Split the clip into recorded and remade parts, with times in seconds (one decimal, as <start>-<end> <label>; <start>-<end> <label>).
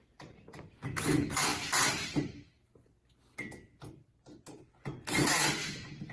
0.0-6.1 recorded